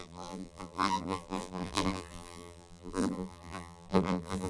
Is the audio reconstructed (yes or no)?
yes